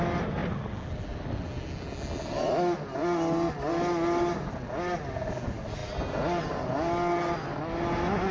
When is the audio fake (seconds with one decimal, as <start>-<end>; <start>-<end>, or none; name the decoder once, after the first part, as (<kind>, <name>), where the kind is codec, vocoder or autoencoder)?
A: none